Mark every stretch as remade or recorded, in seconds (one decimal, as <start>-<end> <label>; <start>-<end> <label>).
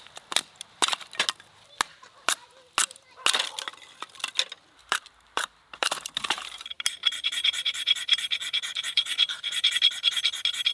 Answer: 0.0-4.8 recorded; 4.8-9.7 remade; 9.7-10.7 recorded